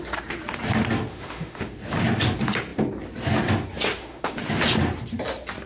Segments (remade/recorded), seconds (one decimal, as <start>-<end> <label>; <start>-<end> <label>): 0.0-1.1 recorded; 1.1-1.8 remade; 1.8-3.9 recorded; 3.9-4.4 remade; 4.4-5.7 recorded